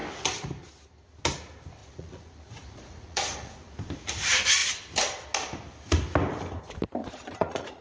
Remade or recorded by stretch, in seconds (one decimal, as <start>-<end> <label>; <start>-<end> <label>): 0.0-1.8 recorded; 1.8-3.5 remade; 3.5-7.0 recorded; 7.0-7.8 remade